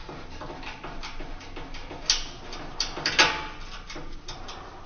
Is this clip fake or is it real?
real